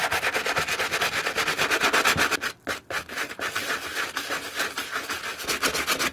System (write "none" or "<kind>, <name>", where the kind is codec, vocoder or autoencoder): none